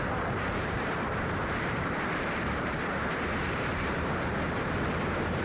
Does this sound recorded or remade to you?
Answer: remade